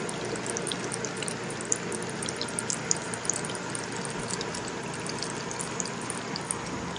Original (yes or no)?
yes